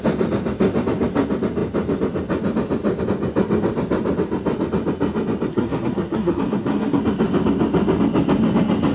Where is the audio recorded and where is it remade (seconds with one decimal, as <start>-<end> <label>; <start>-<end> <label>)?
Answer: 0.0-5.5 recorded; 5.5-7.0 remade; 7.0-8.9 recorded